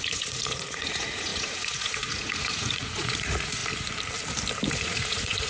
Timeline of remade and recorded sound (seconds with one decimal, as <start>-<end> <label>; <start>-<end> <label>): 0.0-3.6 remade; 3.6-4.7 recorded; 4.7-5.5 remade